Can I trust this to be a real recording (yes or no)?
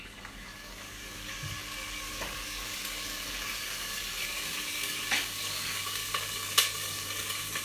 no